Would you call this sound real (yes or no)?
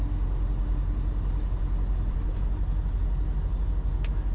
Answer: yes